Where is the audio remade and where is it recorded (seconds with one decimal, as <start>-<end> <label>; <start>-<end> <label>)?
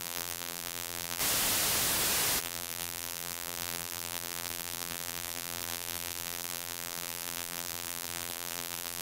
0.0-1.2 remade; 1.2-2.4 recorded; 2.4-9.0 remade